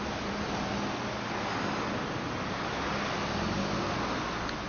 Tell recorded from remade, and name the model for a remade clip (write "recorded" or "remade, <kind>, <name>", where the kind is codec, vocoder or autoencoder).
recorded